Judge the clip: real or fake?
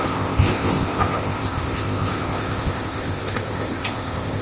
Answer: fake